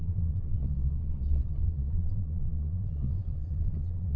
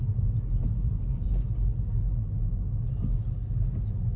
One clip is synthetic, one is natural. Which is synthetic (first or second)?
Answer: first